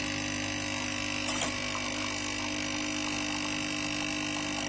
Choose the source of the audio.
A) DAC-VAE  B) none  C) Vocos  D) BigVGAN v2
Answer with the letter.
B